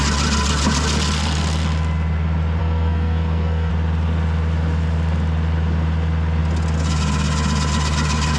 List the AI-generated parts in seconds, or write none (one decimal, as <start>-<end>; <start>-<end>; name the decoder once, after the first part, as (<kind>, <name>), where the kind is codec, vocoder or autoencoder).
2.6-3.7 (codec, SNAC)